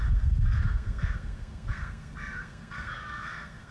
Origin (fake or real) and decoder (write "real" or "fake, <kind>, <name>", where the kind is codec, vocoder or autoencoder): fake, codec, SNAC